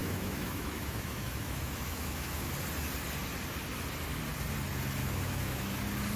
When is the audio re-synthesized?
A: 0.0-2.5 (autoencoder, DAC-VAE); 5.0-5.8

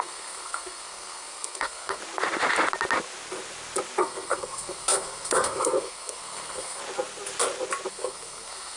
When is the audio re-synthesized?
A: 0.0-2.0 (codec, SNAC); 4.0-6.8; 7.9-8.8